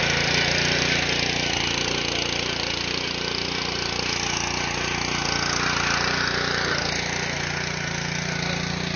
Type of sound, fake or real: real